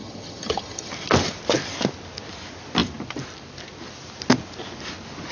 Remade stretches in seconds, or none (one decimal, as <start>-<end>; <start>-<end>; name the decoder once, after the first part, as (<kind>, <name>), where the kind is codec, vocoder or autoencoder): 0.0-0.9 (vocoder, HiFi-GAN)